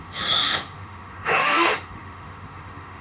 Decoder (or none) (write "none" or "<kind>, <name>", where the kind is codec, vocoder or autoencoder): autoencoder, DAC-VAE